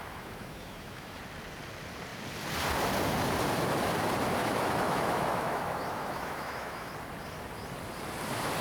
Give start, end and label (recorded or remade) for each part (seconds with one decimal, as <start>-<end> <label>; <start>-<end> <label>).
0.0-1.2 remade; 1.2-4.4 recorded; 4.4-6.9 remade; 6.9-8.6 recorded